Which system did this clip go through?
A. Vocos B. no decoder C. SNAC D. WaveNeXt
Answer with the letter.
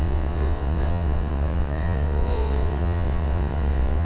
D